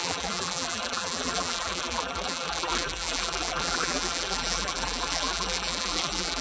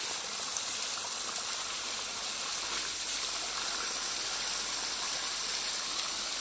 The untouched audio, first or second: second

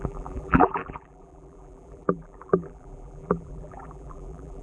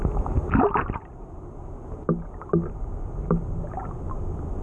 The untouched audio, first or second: second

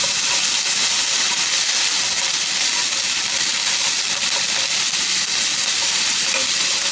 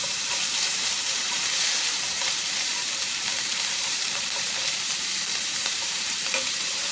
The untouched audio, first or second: first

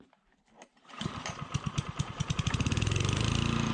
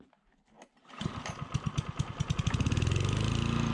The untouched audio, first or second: second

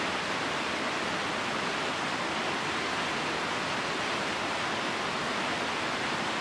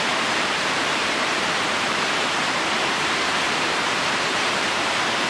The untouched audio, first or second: first